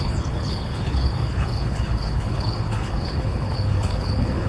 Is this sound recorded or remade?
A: remade